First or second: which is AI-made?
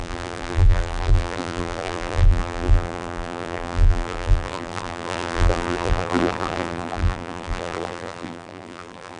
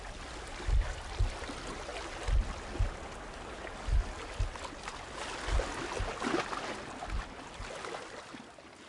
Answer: first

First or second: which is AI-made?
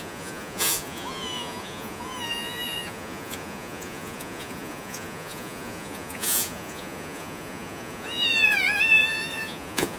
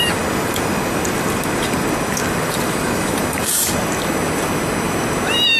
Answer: first